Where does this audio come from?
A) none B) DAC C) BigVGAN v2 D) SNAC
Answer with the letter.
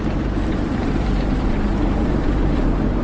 C